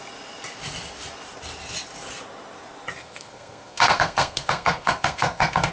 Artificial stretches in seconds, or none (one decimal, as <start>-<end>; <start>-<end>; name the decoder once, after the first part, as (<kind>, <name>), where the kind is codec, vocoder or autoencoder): 3.0-5.7 (codec, SNAC)